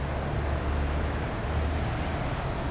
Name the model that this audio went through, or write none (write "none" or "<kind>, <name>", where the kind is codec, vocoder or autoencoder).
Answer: none